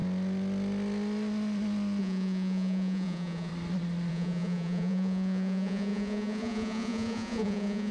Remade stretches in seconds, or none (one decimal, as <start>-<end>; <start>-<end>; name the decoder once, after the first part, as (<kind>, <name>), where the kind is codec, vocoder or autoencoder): 2.0-3.5 (vocoder, Vocos); 4.1-7.9